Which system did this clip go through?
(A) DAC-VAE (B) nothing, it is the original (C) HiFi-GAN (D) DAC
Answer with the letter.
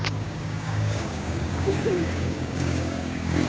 D